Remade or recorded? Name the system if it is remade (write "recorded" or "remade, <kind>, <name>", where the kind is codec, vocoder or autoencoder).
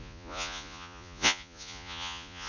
remade, vocoder, Vocos